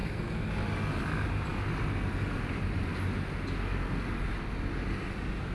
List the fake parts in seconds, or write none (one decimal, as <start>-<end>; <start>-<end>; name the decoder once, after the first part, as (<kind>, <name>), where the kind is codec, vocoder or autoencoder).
0.0-0.5 (codec, SNAC)